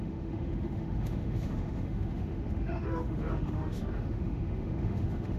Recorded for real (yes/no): no